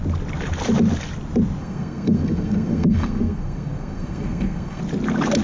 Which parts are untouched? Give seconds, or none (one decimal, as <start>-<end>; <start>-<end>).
0.0-1.6; 4.8-5.4